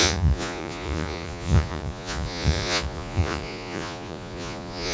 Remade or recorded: remade